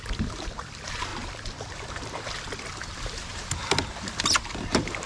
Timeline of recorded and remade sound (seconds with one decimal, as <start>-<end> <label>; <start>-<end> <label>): 0.0-5.1 recorded